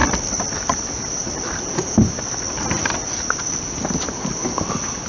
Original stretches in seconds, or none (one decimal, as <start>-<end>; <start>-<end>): 0.0-5.1